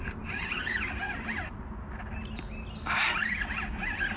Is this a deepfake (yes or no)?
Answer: no